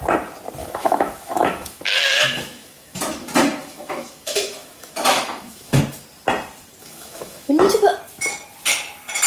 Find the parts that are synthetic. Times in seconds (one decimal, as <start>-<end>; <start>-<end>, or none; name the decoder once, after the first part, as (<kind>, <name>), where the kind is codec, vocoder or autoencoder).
0.6-3.0 (autoencoder, DAC-VAE); 3.6-5.8; 6.8-7.5